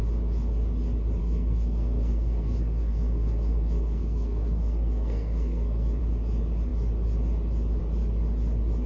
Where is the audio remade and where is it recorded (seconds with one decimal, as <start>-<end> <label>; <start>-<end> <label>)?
0.0-1.2 recorded; 1.2-6.0 remade; 6.0-8.9 recorded